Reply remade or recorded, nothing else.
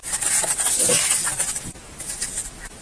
recorded